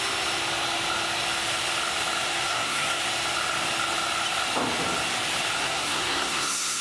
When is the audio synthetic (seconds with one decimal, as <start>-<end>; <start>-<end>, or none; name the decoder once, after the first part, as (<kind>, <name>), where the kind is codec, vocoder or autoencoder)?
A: 2.3-3.0 (codec, SNAC); 5.6-6.8